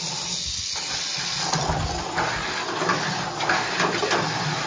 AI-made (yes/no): no